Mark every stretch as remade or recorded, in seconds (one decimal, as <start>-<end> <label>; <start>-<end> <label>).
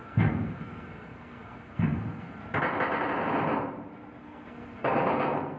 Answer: 0.0-2.4 remade; 2.4-4.2 recorded; 4.2-5.6 remade